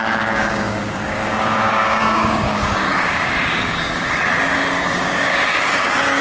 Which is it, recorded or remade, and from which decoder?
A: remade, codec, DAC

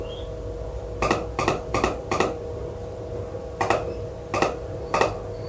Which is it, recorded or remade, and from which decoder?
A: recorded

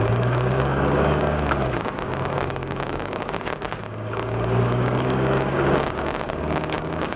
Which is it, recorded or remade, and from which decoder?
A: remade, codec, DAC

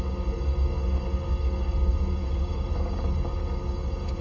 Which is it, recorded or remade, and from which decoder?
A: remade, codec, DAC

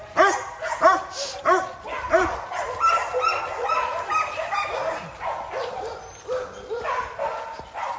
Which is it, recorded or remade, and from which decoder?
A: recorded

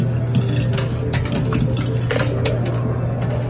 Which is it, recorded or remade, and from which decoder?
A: recorded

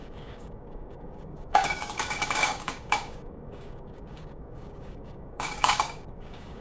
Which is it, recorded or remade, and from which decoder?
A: remade, codec, DAC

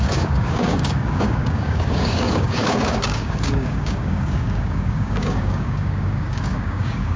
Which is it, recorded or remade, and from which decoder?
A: remade, codec, DAC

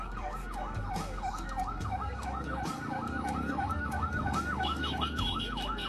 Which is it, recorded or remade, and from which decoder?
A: remade, codec, DAC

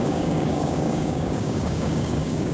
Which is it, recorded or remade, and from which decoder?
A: remade, codec, DAC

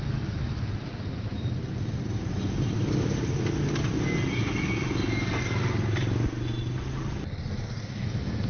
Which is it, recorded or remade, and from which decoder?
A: recorded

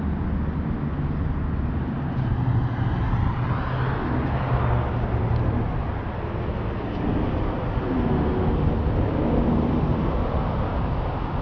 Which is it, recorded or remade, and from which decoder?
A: recorded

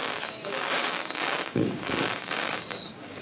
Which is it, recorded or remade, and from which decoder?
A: remade, codec, DAC